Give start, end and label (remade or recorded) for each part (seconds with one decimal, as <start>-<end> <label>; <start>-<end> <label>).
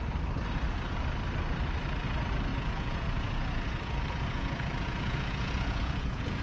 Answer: 0.0-2.5 recorded; 2.5-6.4 remade